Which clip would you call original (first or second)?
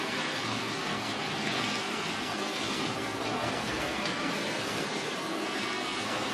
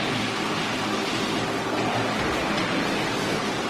second